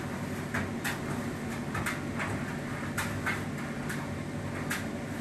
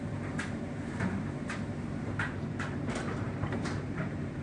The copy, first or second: second